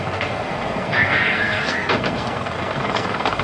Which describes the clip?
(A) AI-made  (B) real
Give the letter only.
A